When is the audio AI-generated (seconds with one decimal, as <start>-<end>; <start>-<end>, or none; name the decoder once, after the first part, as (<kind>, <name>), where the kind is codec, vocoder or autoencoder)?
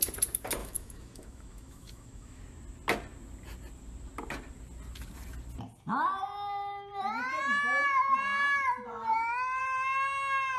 0.6-2.4 (autoencoder, DAC-VAE); 9.1-9.6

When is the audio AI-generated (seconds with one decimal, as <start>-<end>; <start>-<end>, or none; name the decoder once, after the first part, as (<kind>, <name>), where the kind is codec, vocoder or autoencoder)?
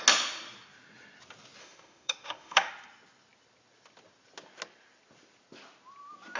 1.6-2.7 (autoencoder, DAC-VAE)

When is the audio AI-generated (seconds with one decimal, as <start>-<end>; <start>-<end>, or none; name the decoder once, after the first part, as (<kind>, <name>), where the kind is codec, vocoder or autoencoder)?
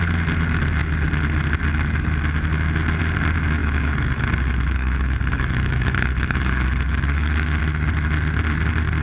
3.6-7.6 (autoencoder, DAC-VAE)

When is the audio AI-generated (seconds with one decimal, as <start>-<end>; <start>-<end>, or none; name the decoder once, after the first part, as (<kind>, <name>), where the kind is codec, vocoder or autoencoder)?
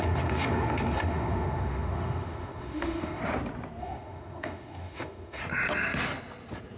0.0-3.2 (autoencoder, DAC-VAE); 3.8-5.4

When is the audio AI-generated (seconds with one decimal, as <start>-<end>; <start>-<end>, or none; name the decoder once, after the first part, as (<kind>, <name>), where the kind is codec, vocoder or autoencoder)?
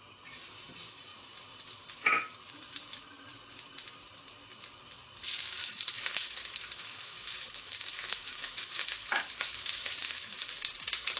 5.6-10.5 (autoencoder, DAC-VAE)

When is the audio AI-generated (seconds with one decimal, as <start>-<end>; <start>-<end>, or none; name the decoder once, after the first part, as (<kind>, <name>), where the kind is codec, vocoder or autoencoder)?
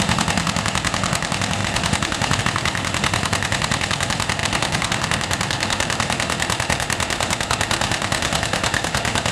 0.0-9.3 (autoencoder, DAC-VAE)